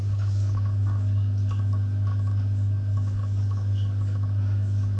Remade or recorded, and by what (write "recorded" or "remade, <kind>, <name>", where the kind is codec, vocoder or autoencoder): remade, codec, DAC